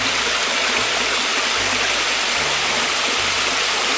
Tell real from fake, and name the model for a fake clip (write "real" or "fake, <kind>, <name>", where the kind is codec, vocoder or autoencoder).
real